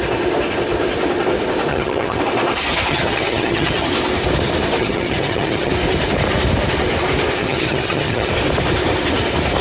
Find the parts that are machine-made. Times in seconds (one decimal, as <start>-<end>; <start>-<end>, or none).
1.7-2.2; 2.9-3.9; 4.8-5.7; 7.4-8.3